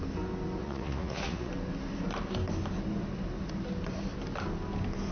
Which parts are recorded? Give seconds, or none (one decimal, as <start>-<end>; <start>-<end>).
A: 0.0-0.6; 1.5-5.1